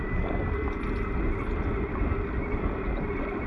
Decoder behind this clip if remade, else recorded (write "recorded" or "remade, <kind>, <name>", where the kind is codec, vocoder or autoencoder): recorded